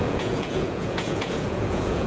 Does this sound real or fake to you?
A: fake